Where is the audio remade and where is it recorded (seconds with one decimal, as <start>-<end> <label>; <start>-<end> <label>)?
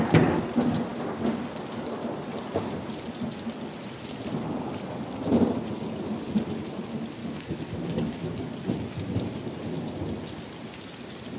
0.0-7.2 recorded; 7.2-8.5 remade; 8.5-11.4 recorded